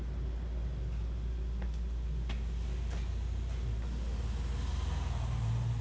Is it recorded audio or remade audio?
recorded